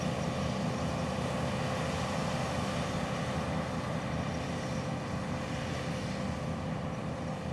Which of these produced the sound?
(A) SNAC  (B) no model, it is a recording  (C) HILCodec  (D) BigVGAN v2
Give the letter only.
B